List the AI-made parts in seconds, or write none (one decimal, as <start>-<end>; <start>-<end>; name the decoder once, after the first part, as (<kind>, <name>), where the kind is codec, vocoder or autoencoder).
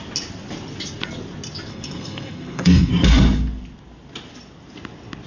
1.7-2.9 (codec, SNAC)